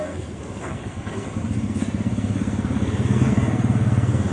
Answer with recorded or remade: remade